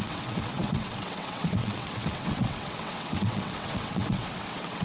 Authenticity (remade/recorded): remade